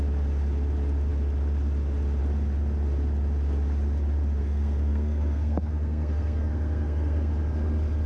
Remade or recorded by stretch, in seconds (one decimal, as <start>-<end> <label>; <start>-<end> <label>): 0.0-4.4 recorded; 4.4-7.3 remade; 7.3-8.1 recorded